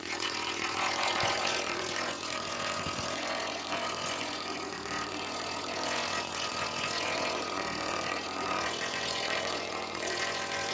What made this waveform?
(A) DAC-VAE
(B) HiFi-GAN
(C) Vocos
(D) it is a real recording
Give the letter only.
C